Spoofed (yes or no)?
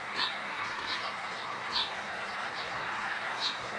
yes